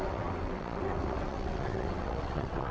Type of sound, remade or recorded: remade